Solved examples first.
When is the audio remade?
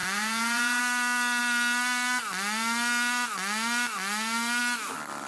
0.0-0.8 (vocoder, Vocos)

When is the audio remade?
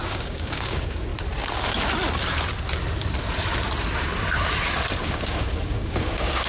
0.0-1.1 (codec, DAC); 5.0-6.5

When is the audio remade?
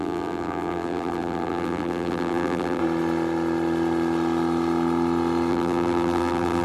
0.0-2.8 (vocoder, BigVGAN v2); 5.5-6.6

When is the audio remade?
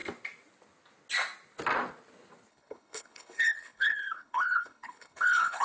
2.5-5.6 (codec, HILCodec)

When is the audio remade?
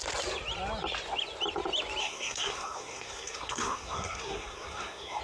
2.0-5.2 (codec, SNAC)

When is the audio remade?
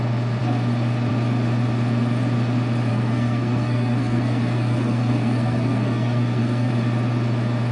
2.9-6.7 (codec, SNAC)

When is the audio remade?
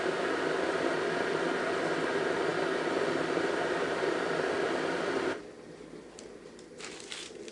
none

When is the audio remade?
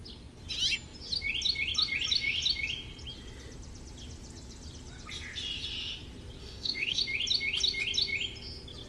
6.4-7.0 (autoencoder, DAC-VAE)